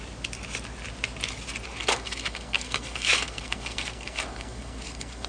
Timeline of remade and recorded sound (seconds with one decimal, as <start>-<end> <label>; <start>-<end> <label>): 0.0-1.7 recorded; 1.7-5.3 remade